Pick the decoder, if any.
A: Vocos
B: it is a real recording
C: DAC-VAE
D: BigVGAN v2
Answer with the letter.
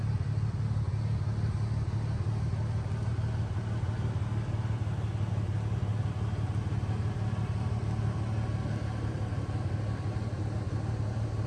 B